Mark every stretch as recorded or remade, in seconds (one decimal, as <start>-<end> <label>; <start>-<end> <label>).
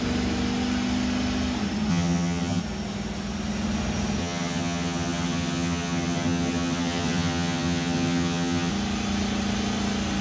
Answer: 0.0-1.9 recorded; 1.9-2.6 remade; 2.6-4.2 recorded; 4.2-8.7 remade; 8.7-10.2 recorded